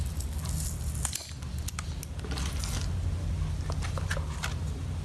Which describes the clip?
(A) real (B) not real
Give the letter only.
A